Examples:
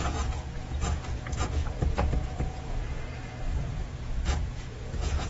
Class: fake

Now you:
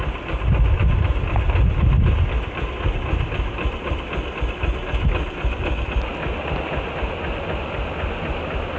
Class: real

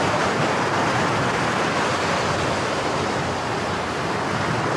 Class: real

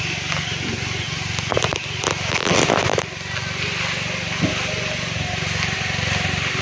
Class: real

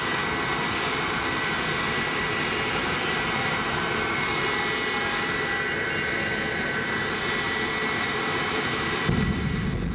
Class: real